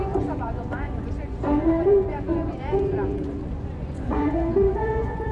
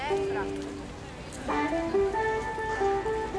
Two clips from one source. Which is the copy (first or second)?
first